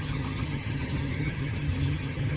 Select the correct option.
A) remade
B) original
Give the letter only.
A